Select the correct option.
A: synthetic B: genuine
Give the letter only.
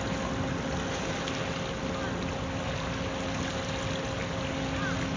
B